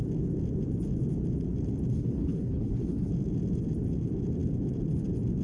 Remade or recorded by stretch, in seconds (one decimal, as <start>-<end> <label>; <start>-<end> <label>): 0.0-1.9 recorded; 1.9-3.1 remade; 3.1-5.4 recorded